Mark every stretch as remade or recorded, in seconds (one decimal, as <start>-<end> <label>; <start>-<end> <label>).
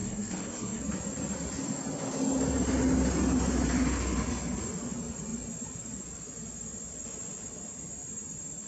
0.0-0.8 remade; 0.8-8.7 recorded